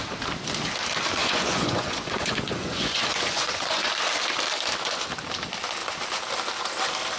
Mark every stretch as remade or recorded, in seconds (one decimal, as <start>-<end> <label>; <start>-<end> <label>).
0.0-1.2 recorded; 1.2-3.9 remade; 3.9-7.2 recorded